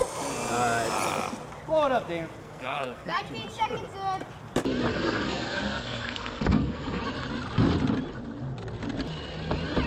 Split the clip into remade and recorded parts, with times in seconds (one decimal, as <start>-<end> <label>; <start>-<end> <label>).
0.0-2.4 recorded; 2.4-3.2 remade; 3.2-4.9 recorded; 4.9-7.0 remade; 7.0-9.9 recorded